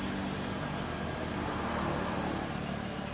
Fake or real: real